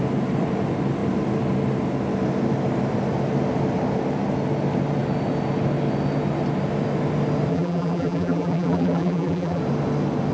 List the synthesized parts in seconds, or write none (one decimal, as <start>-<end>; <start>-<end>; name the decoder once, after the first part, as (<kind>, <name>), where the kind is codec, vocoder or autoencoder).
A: 7.5-9.6 (vocoder, BigVGAN v2)